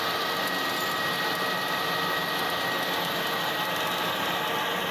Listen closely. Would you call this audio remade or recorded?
recorded